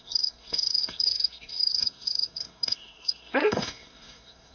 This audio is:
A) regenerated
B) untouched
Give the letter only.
A